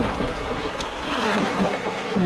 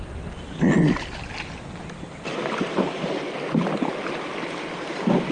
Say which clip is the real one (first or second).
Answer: second